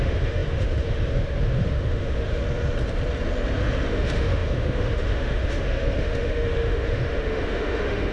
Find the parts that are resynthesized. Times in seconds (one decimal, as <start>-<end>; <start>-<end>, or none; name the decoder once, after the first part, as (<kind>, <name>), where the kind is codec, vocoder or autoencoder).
0.0-2.4 (autoencoder, DAC-VAE); 3.6-8.1